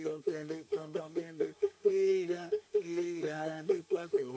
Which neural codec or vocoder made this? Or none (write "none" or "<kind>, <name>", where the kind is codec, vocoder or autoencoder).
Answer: codec, SNAC